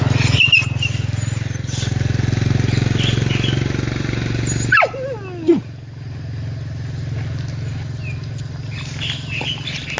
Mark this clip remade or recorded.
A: recorded